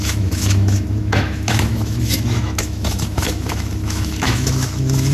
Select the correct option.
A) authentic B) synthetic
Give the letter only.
B